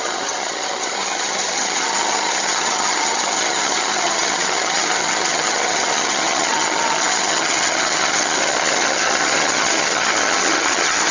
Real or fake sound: fake